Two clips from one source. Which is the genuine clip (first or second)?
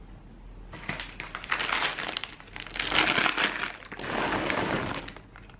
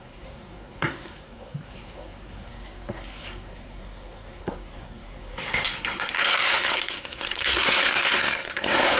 first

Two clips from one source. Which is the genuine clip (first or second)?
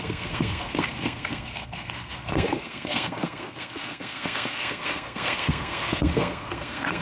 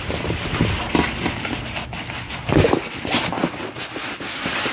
second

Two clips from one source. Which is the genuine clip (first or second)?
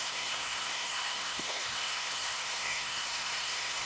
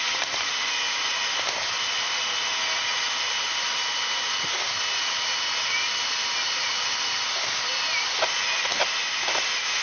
second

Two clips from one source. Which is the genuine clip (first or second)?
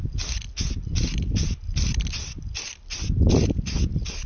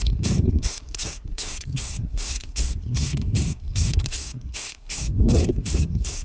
first